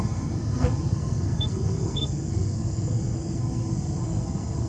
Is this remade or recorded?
remade